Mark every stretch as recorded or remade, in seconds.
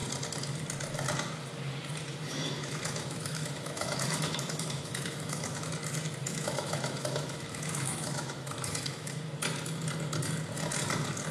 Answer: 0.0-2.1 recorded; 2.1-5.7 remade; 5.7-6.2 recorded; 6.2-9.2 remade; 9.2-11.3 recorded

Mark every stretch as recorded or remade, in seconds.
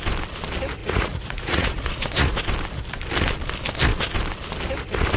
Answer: 0.0-0.8 recorded; 0.8-2.4 remade; 2.4-5.2 recorded